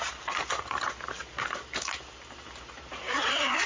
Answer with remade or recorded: remade